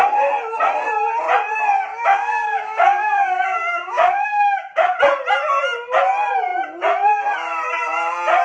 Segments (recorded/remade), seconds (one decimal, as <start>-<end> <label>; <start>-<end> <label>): 0.0-1.9 recorded; 1.9-5.0 remade; 5.0-8.4 recorded